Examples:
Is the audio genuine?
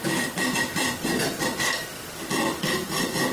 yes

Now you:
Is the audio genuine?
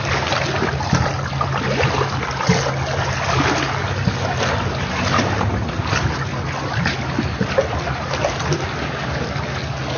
yes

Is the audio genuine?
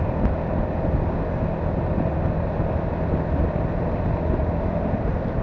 yes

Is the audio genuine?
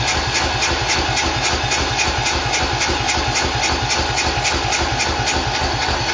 yes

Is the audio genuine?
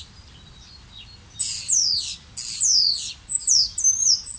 yes